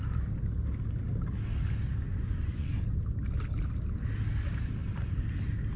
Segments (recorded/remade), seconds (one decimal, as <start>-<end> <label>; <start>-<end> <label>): 0.0-2.1 recorded; 2.1-2.7 remade; 2.7-5.8 recorded